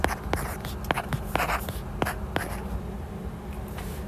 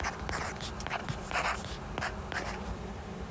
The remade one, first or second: second